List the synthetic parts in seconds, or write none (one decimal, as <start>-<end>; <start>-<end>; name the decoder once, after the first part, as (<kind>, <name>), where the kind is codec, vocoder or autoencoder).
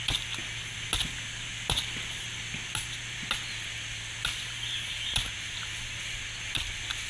none